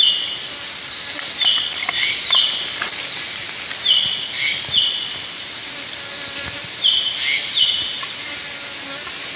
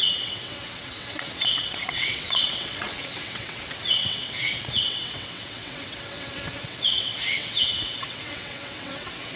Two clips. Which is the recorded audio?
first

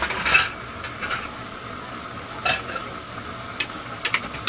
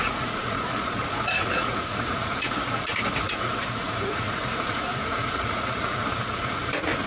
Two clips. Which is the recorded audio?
first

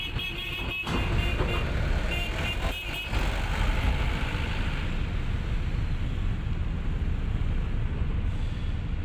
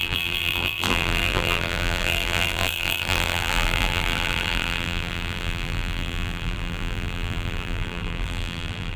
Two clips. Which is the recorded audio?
first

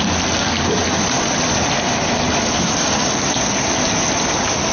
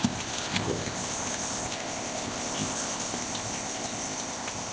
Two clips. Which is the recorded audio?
first